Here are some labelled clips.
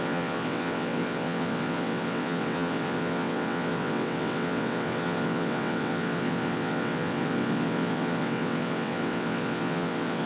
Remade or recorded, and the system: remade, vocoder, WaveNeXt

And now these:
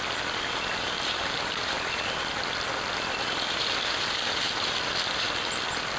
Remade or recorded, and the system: recorded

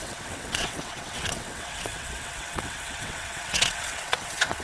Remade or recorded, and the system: remade, vocoder, WaveNeXt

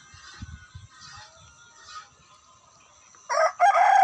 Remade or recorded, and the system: recorded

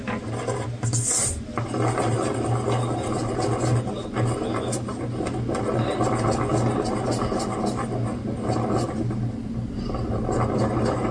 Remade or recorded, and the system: recorded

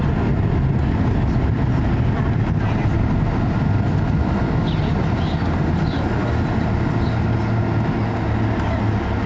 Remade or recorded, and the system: recorded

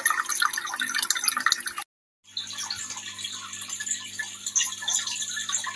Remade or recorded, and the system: recorded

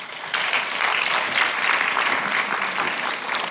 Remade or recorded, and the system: recorded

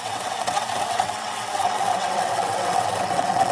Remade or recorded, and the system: remade, vocoder, WaveNeXt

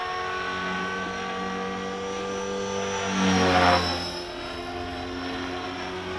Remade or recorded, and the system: recorded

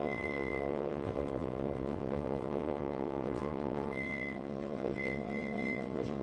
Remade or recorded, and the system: remade, vocoder, WaveNeXt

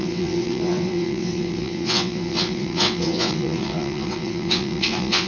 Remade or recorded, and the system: remade, vocoder, WaveNeXt